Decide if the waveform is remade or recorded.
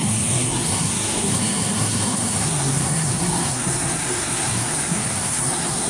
remade